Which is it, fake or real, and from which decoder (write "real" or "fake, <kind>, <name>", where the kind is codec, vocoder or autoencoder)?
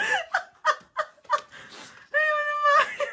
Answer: real